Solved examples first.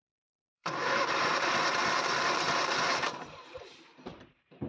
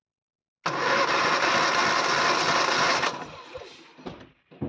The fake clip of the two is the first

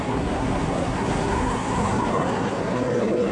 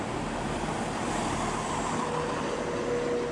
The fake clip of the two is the first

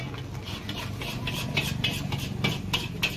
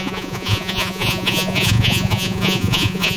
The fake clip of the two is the second